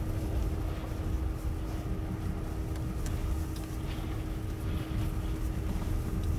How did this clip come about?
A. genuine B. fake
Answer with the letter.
A